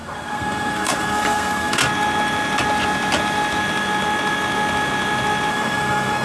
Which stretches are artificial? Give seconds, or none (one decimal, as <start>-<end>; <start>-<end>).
0.0-1.8; 5.5-6.2